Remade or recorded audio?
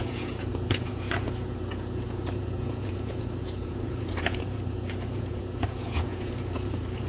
remade